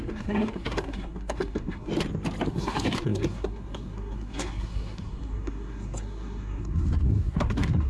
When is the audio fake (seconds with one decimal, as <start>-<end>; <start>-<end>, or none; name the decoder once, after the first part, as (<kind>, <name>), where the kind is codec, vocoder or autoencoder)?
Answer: 0.0-1.9 (codec, SNAC); 2.5-7.9